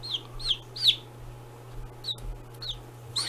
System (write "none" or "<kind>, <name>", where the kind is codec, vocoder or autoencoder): none